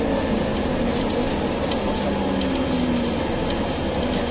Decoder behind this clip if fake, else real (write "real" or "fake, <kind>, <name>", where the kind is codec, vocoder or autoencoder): real